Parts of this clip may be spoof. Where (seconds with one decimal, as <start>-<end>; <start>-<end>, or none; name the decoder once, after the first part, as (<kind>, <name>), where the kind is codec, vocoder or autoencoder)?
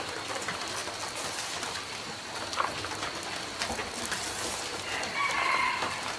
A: none